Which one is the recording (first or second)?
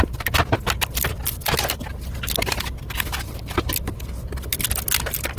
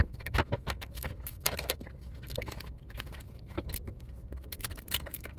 first